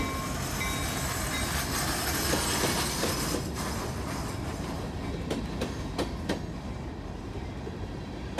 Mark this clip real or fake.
real